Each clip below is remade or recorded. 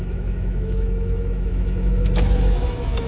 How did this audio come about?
remade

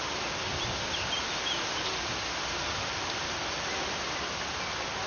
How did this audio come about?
recorded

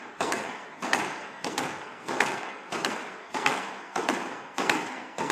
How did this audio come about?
remade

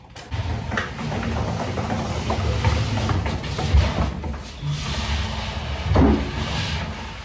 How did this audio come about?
recorded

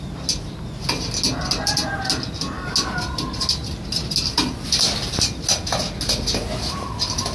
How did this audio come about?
recorded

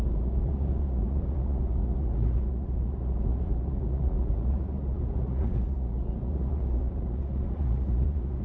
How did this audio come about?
remade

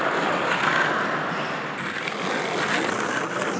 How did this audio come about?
recorded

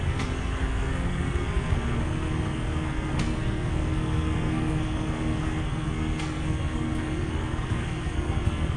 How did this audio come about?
remade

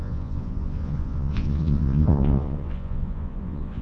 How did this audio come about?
remade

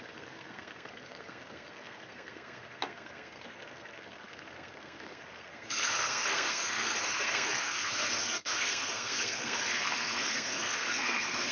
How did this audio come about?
remade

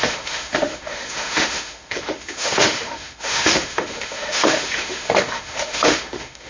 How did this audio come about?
remade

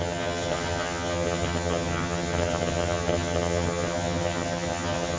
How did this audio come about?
remade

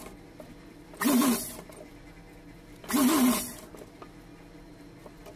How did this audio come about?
recorded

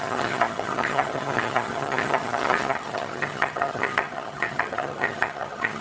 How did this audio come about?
remade